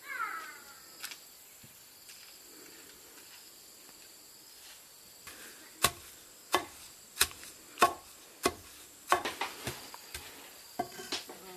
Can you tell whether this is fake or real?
real